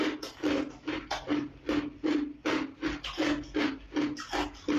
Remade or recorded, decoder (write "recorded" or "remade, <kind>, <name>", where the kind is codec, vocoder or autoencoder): recorded